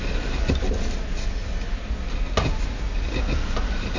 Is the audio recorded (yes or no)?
yes